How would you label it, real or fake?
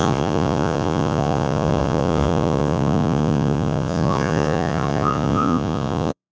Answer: fake